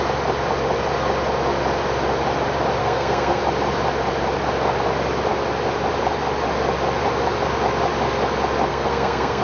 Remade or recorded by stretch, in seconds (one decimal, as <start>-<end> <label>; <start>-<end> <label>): 0.0-2.8 recorded; 2.8-3.4 remade; 3.4-8.7 recorded; 8.7-9.4 remade